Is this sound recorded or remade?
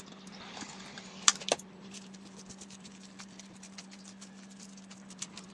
recorded